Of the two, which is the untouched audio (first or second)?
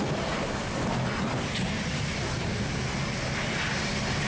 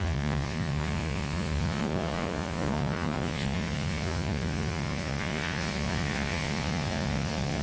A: first